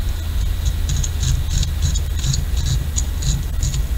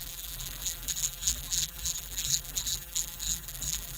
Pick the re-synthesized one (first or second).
second